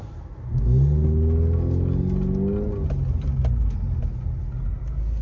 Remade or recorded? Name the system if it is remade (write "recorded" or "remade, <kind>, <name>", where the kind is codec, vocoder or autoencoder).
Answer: recorded